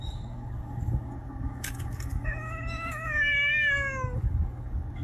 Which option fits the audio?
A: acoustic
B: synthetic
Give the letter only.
B